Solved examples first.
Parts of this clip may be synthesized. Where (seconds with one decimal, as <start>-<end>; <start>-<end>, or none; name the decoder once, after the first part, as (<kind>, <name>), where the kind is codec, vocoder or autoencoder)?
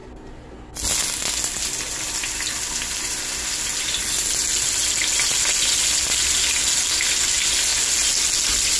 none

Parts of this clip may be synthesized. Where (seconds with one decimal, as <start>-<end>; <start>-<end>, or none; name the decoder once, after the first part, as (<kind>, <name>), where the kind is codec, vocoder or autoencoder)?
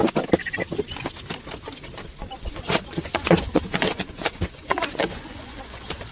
2.2-6.1 (vocoder, Vocos)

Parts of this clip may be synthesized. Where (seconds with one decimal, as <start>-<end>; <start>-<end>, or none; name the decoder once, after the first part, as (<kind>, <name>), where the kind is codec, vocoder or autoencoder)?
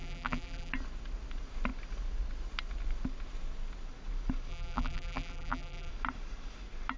0.0-0.7 (vocoder, BigVGAN v2); 4.5-5.9